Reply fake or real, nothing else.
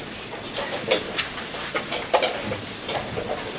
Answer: real